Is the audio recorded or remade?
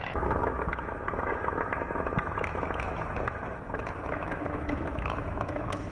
remade